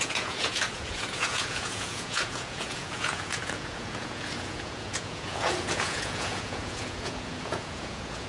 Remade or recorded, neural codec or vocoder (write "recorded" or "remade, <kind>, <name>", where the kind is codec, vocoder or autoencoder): remade, vocoder, Vocos